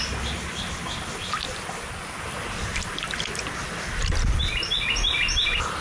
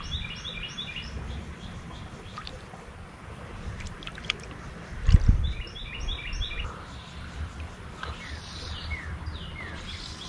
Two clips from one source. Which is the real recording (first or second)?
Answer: first